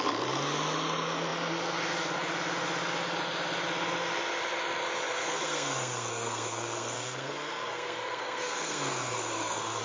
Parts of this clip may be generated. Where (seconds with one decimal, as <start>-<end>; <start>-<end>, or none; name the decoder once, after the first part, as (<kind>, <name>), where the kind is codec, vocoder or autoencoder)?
5.2-9.8 (codec, SNAC)